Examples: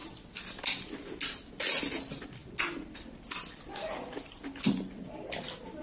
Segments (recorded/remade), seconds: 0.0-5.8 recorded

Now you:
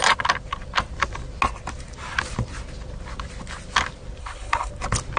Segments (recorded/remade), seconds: 0.0-4.2 recorded; 4.2-4.7 remade; 4.7-5.2 recorded

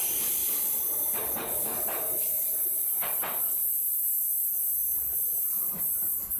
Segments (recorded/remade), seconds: 0.0-6.4 recorded